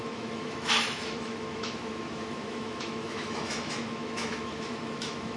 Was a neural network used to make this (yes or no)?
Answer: yes